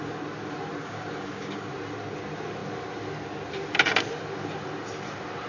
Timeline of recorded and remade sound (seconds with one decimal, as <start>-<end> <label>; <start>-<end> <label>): 0.0-0.8 recorded; 0.8-1.7 remade; 1.7-5.5 recorded